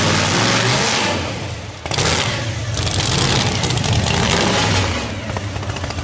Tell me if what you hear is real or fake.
real